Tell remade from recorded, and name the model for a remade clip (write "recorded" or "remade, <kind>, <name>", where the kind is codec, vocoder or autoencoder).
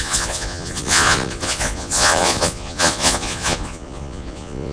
remade, vocoder, Vocos